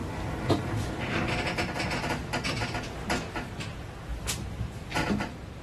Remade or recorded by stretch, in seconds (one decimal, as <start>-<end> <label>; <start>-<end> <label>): 0.0-2.2 remade; 2.2-4.1 recorded; 4.1-5.0 remade; 5.0-5.6 recorded